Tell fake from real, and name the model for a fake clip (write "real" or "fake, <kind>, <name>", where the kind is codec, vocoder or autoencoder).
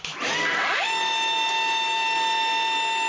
real